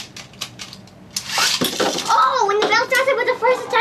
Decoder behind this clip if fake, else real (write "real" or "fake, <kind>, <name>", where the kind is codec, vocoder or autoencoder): real